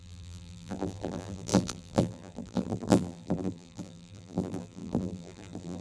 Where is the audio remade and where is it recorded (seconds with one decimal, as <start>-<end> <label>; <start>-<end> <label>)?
0.0-5.8 remade